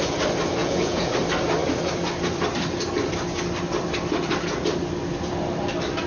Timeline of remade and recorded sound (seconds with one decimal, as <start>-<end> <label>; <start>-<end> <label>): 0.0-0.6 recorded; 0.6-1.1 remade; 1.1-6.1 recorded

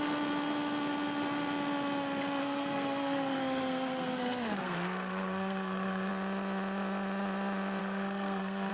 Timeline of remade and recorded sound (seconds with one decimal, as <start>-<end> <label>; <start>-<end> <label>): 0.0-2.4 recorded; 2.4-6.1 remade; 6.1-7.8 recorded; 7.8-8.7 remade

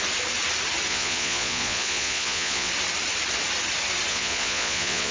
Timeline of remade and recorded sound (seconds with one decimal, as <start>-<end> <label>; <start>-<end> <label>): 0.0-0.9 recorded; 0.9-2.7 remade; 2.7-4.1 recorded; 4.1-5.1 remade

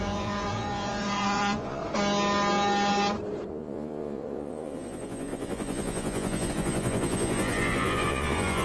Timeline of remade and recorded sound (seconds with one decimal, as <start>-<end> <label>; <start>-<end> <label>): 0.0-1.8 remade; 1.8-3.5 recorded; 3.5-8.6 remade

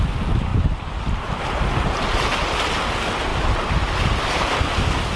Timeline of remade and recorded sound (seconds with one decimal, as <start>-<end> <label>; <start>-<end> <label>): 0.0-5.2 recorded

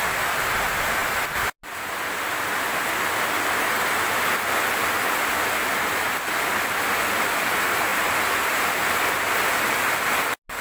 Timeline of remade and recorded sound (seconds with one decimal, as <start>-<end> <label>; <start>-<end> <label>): 0.0-10.6 recorded